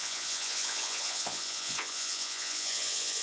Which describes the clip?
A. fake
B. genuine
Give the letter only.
A